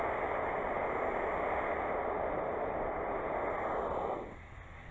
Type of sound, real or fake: real